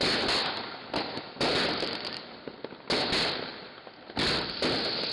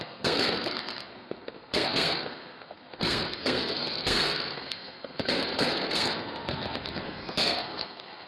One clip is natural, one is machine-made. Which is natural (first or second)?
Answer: first